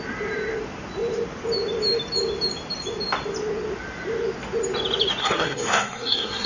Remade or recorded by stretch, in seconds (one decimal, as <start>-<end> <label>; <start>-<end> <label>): 0.0-5.2 recorded; 5.2-6.5 remade